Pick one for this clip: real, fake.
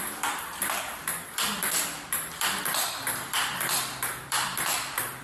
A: fake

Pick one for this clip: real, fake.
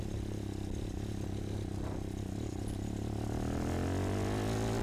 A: real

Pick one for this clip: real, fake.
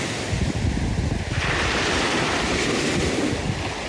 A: real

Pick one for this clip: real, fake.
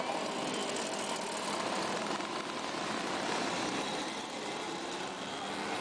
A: real